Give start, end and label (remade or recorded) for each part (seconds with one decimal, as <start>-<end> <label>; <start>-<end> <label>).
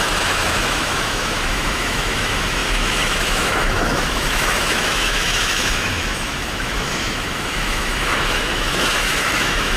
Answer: 0.0-9.8 remade